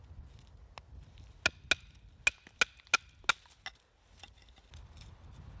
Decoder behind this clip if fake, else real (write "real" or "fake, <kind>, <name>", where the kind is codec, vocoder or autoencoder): real